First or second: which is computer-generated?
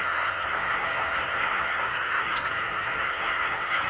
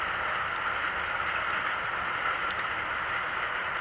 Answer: first